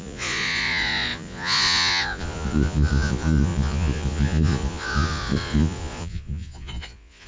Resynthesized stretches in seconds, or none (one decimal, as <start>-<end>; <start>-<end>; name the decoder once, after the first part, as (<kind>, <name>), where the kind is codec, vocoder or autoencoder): 0.0-7.3 (vocoder, Vocos)